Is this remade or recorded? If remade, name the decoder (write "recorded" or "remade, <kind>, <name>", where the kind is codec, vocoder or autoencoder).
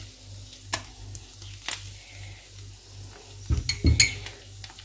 recorded